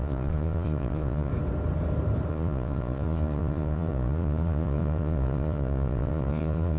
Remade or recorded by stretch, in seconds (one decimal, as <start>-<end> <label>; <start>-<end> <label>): 0.0-1.3 remade; 1.3-2.3 recorded; 2.3-6.8 remade